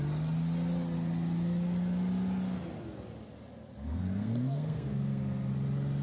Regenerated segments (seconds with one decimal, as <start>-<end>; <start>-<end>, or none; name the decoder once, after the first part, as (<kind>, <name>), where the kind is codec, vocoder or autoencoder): 3.9-5.5 (codec, SNAC)